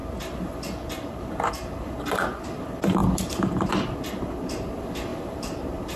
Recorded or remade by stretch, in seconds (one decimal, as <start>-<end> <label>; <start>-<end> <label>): 0.0-0.6 recorded; 0.6-6.0 remade